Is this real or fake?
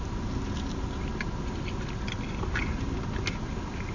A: real